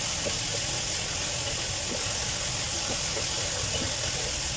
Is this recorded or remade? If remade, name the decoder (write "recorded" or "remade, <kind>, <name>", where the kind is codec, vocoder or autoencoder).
recorded